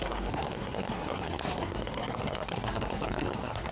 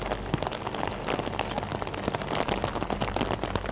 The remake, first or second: first